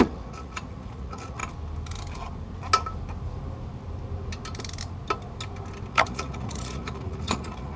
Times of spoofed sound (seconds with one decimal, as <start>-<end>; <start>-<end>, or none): 0.0-1.4; 5.9-7.8